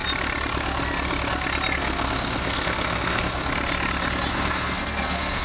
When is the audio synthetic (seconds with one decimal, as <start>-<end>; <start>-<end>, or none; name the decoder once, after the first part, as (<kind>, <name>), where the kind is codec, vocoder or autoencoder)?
1.8-3.5 (codec, SNAC); 4.3-5.4